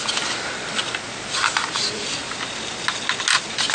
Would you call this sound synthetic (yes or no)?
no